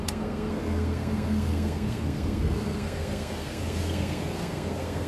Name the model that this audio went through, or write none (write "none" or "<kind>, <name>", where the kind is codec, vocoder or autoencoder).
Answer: codec, SNAC